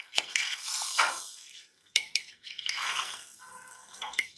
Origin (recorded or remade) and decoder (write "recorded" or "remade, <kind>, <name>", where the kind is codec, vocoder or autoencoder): remade, codec, SNAC